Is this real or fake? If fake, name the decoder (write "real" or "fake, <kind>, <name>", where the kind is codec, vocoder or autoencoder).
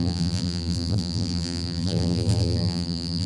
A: fake, vocoder, BigVGAN v2